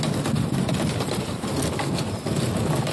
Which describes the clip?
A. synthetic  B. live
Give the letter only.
B